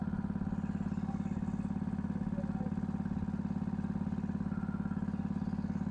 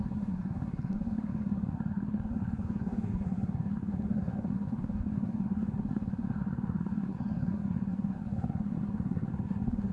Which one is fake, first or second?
second